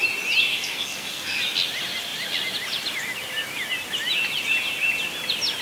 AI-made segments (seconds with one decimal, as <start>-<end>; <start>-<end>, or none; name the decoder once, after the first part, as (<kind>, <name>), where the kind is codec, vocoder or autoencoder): 0.5-1.4 (codec, SNAC)